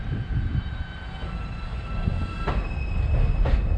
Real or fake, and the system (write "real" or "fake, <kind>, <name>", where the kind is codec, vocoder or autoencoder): real